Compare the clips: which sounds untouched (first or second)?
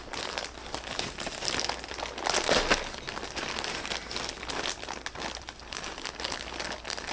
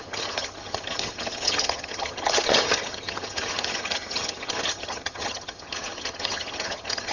first